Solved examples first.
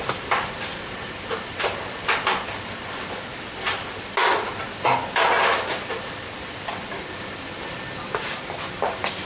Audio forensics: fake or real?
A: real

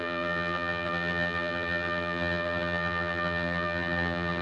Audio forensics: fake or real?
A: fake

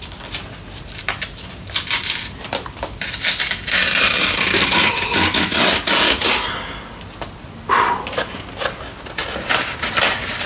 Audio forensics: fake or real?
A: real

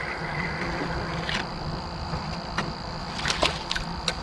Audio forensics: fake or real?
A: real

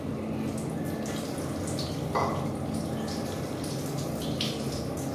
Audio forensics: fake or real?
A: real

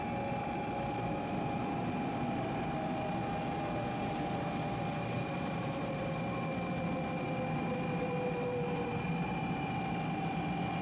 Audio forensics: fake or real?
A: real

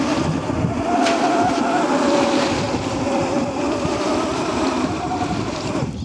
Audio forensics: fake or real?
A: fake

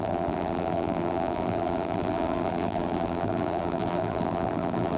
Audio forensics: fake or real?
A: fake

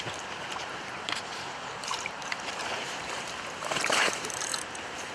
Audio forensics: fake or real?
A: fake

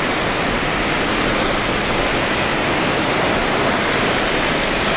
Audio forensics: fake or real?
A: real